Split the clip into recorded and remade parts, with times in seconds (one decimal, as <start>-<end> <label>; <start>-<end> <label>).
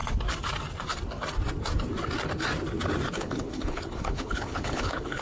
0.0-3.1 recorded; 3.1-5.2 remade